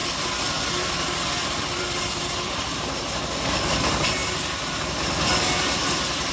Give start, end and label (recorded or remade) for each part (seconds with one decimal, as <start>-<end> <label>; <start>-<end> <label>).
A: 0.0-6.3 recorded